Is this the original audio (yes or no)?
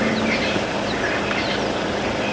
yes